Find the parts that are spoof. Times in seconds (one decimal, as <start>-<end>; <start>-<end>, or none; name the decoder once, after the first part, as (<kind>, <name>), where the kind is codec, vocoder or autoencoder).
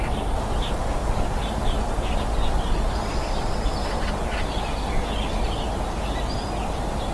1.0-4.6 (vocoder, BigVGAN v2)